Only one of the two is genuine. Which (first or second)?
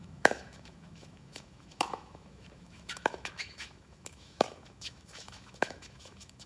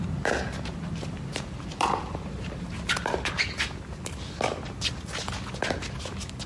second